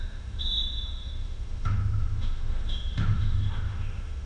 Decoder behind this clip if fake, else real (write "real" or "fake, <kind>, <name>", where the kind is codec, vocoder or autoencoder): fake, autoencoder, DAC-VAE